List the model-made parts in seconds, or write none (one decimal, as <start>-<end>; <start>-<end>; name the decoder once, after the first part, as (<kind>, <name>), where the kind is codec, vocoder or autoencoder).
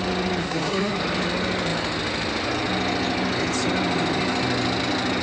0.4-1.0 (codec, SNAC)